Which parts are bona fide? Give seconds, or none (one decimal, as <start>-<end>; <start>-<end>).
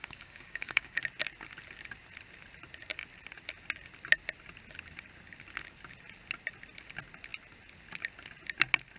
1.0-9.0